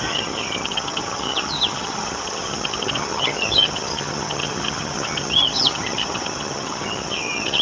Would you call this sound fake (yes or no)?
yes